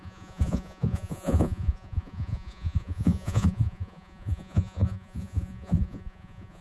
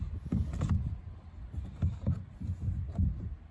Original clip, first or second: second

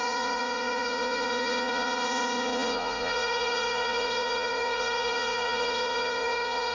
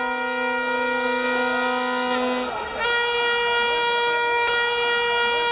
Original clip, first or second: second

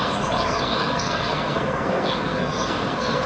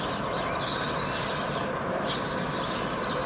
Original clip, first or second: second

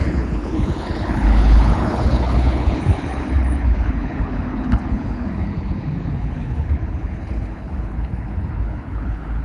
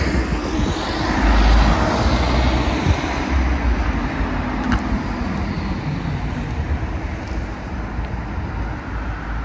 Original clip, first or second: second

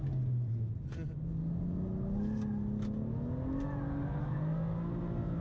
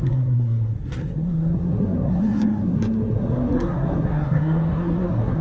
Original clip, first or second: first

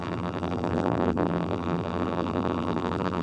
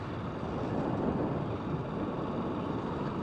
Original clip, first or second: second